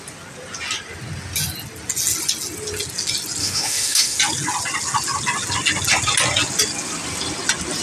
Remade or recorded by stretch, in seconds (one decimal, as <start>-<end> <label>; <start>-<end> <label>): 0.0-3.4 recorded; 3.4-4.2 remade; 4.2-7.8 recorded